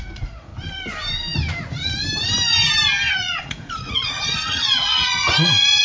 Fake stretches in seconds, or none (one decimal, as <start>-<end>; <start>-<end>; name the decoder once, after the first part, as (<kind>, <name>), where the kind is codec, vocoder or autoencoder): 0.0-0.5 (vocoder, Vocos); 3.1-5.8